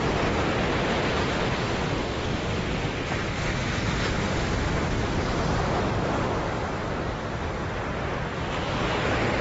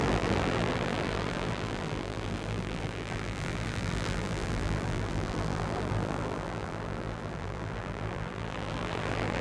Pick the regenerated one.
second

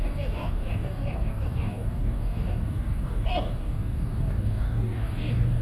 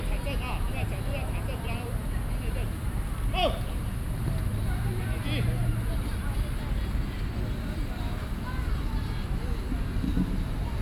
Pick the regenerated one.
first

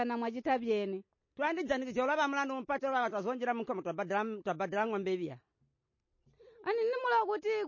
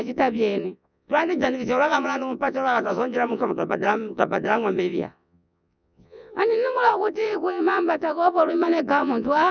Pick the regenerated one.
second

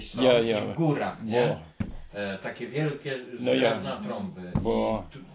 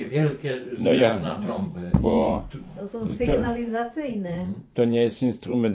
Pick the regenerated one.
second